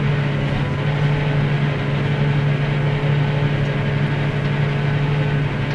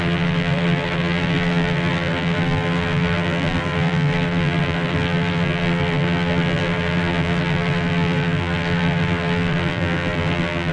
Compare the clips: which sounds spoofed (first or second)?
second